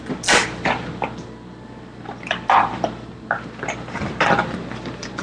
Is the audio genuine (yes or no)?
yes